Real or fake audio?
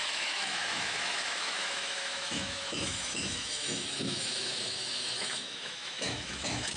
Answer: fake